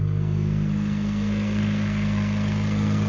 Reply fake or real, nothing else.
fake